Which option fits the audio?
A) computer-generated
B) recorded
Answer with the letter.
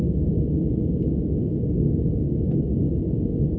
B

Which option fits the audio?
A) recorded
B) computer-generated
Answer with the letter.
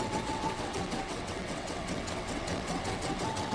B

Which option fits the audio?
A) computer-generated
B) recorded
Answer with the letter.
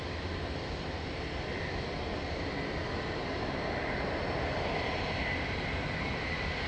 B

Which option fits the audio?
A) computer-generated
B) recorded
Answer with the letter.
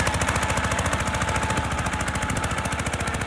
B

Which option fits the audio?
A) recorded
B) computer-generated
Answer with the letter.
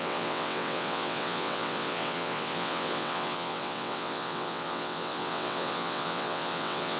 B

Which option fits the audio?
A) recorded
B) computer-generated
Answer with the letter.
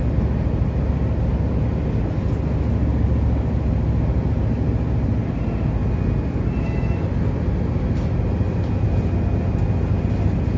A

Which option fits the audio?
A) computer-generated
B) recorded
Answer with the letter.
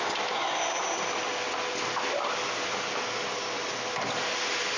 B